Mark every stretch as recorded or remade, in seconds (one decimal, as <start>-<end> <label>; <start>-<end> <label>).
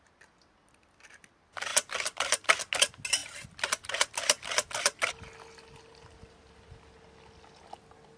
0.0-8.2 recorded